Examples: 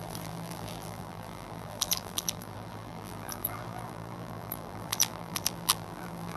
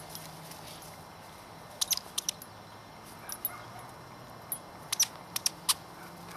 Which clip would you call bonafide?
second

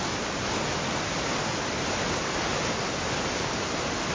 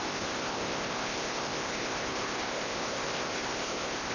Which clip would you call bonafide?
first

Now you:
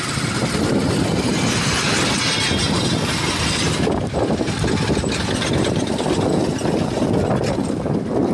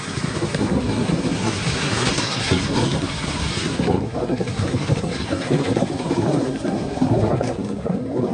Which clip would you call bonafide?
first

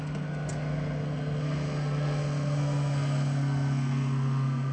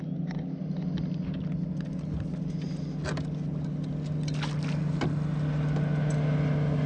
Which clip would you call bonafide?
second